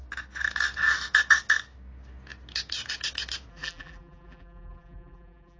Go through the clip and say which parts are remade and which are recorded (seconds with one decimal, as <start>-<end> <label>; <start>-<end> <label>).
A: 0.0-3.5 recorded; 3.5-5.6 remade